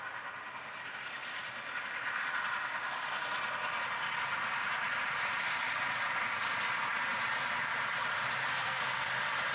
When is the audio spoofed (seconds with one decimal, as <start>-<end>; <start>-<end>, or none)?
8.4-9.1